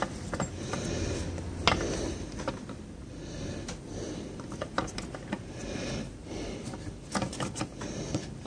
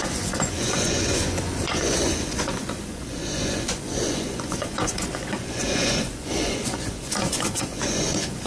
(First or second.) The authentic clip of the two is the first